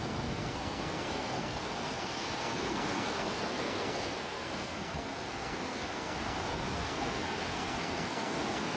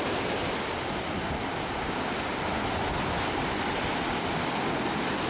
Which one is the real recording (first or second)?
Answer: second